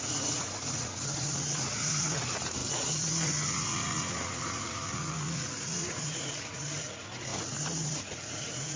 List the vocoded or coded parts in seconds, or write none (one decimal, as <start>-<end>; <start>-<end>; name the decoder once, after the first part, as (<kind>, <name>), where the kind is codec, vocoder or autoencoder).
0.0-8.8 (vocoder, Vocos)